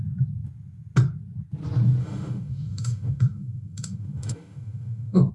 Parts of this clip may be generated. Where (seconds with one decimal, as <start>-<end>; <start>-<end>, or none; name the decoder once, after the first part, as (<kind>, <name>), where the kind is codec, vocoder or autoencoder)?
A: 2.0-5.3 (autoencoder, DAC-VAE)